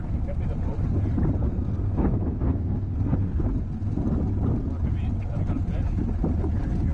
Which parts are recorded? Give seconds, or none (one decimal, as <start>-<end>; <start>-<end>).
0.0-1.5; 3.4-6.9